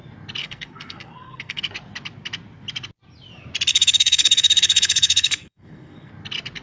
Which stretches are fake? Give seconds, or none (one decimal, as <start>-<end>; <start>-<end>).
0.4-1.6; 3.7-6.1